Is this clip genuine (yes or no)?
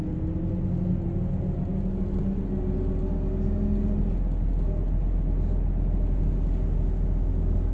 yes